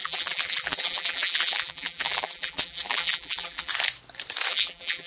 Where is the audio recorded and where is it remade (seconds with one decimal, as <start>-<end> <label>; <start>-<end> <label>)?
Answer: 0.0-3.7 remade; 3.7-4.5 recorded; 4.5-5.1 remade